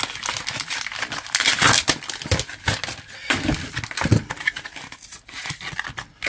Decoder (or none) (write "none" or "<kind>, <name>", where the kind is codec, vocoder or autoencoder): none